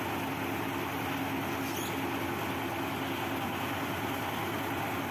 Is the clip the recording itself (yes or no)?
yes